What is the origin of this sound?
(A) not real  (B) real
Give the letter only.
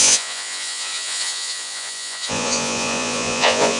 A